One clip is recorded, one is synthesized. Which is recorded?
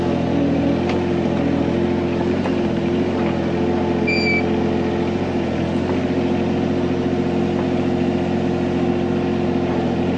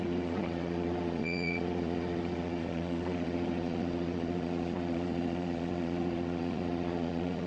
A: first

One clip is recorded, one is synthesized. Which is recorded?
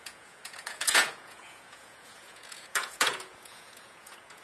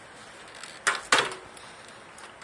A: second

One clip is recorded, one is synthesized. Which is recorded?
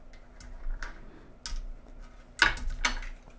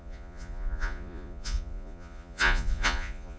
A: first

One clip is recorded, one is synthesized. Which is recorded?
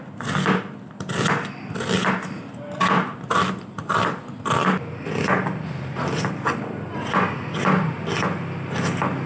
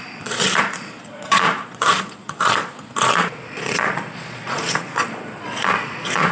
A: first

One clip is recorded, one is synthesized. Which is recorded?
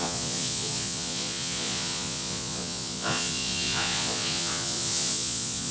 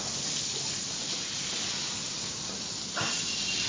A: second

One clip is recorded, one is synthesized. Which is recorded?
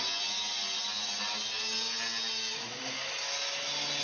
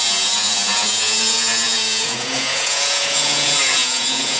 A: first